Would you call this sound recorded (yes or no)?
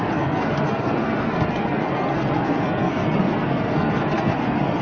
no